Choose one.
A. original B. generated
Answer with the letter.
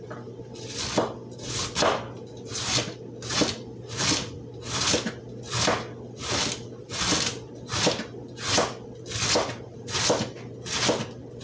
A